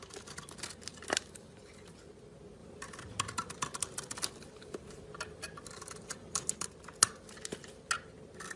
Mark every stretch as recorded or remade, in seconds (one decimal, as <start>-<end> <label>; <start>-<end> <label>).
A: 0.0-2.6 recorded; 2.6-6.5 remade; 6.5-8.6 recorded